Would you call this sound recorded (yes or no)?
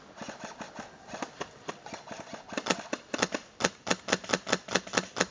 yes